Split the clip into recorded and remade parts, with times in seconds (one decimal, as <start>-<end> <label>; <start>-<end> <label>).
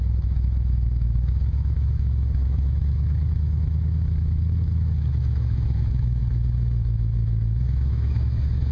0.0-8.7 remade